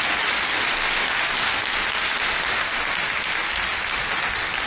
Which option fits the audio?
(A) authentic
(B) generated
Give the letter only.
A